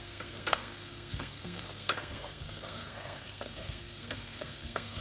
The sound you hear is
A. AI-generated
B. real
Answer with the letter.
A